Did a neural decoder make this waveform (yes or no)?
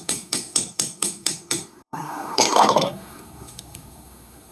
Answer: yes